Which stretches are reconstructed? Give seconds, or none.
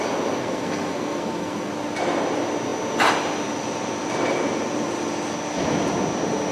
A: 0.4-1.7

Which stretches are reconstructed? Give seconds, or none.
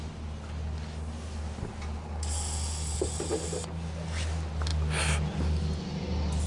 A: none